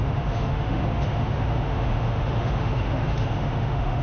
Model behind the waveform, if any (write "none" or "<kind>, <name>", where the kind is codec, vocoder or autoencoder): autoencoder, DAC-VAE